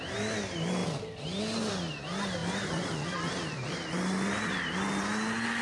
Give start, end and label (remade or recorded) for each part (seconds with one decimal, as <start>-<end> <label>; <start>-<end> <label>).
0.0-2.4 recorded; 2.4-3.9 remade; 3.9-5.6 recorded